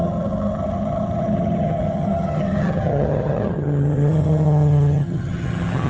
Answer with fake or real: fake